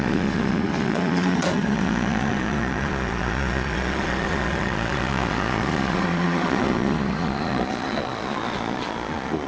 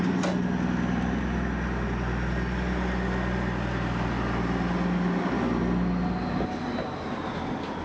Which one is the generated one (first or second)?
first